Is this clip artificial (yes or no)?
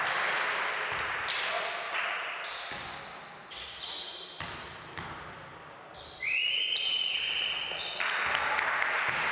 no